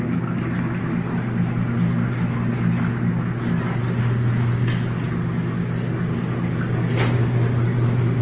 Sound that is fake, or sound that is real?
real